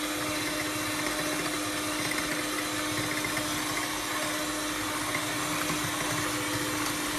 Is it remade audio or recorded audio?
recorded